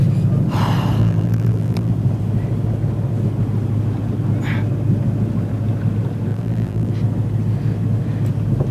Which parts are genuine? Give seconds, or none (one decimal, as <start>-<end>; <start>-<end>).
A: 0.0-1.0; 1.9-6.3; 6.9-8.7